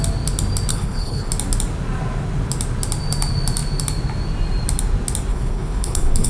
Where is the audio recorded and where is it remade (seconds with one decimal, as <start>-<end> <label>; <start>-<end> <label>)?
0.0-0.7 recorded; 0.7-1.3 remade; 1.3-5.3 recorded; 5.3-6.3 remade

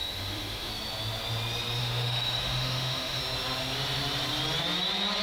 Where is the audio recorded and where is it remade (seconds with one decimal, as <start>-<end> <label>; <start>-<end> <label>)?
0.0-0.7 remade; 0.7-1.8 recorded; 1.8-3.2 remade; 3.2-5.2 recorded

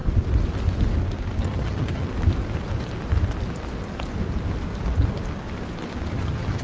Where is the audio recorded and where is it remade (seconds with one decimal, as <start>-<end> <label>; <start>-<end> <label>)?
0.0-1.4 recorded; 1.4-2.1 remade; 2.1-6.1 recorded; 6.1-6.6 remade

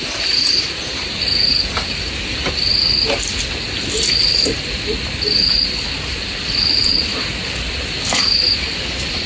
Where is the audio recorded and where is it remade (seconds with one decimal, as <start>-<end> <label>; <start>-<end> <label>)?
0.0-9.3 recorded

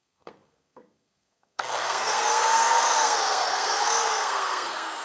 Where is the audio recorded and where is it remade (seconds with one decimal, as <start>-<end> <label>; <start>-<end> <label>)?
0.0-5.0 remade